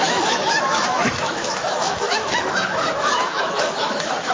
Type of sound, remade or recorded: remade